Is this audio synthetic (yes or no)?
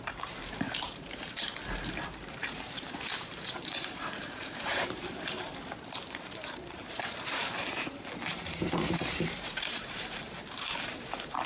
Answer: yes